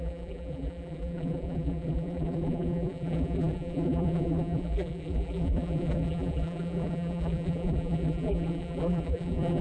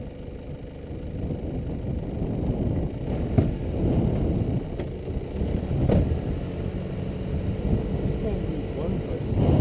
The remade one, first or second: first